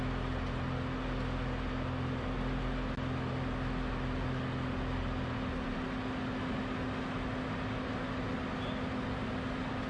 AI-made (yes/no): no